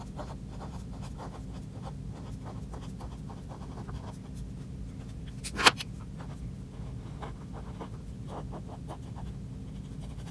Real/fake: real